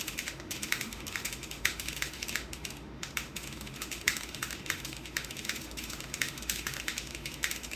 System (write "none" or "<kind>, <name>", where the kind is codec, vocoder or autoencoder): autoencoder, DAC-VAE